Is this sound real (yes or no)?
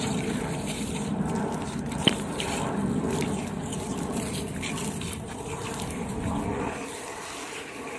no